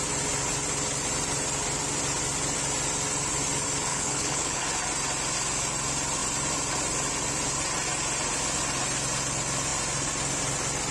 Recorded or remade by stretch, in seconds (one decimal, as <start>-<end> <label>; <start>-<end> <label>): 0.0-3.9 recorded; 3.9-4.6 remade; 4.6-10.9 recorded